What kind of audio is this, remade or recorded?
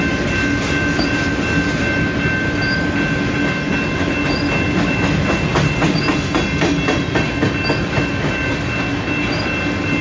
recorded